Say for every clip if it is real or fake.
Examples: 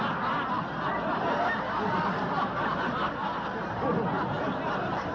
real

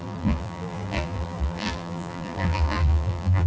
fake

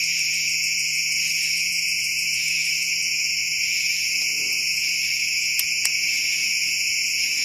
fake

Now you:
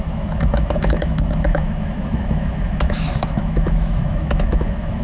fake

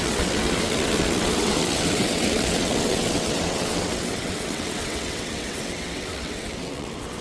fake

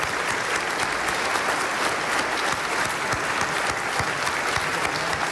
real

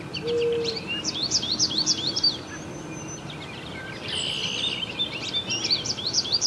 real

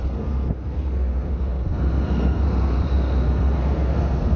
fake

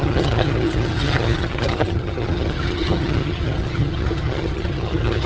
fake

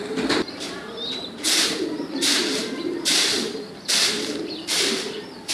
fake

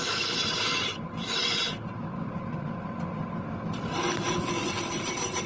fake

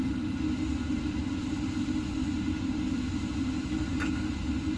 real